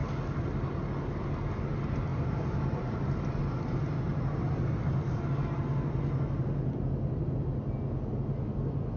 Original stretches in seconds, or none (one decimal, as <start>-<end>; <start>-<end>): 0.0-2.1; 5.2-9.0